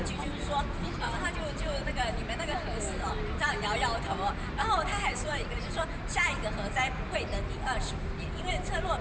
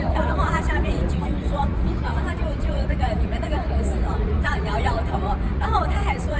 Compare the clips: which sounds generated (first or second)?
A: second